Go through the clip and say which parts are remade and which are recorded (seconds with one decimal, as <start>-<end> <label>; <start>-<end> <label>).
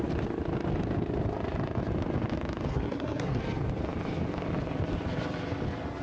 0.0-2.7 recorded; 2.7-3.4 remade; 3.4-6.0 recorded